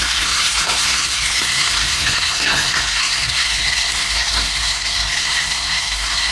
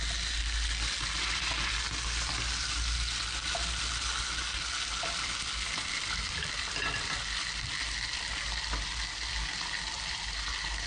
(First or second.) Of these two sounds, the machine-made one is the first